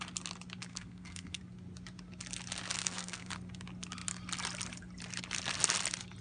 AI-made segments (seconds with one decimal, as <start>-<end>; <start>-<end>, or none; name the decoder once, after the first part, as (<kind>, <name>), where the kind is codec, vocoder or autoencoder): 0.7-1.4 (codec, SNAC); 2.8-3.3